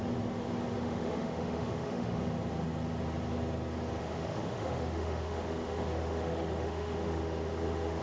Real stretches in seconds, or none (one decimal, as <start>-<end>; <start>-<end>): 0.0-0.8; 2.2-4.0